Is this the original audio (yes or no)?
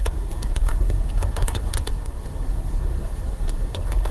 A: no